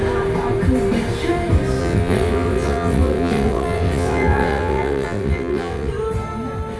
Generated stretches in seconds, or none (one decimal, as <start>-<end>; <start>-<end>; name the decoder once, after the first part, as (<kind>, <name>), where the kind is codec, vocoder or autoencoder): 1.8-5.9 (vocoder, WaveNeXt)